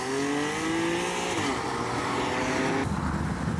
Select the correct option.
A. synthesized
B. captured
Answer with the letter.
B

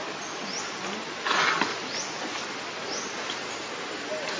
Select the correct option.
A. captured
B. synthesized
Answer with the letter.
A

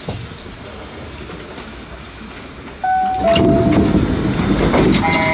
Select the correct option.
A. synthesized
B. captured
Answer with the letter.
B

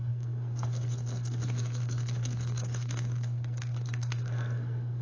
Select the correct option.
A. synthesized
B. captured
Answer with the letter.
A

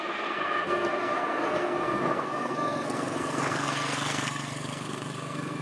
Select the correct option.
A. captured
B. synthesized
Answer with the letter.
B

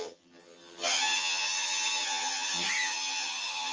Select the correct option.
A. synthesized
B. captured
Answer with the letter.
A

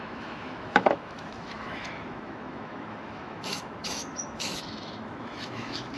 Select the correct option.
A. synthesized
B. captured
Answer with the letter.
A